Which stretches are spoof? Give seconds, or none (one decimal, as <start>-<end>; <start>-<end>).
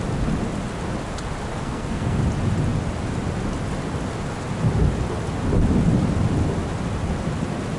1.5-2.2